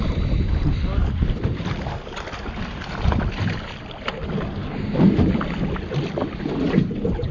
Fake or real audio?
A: real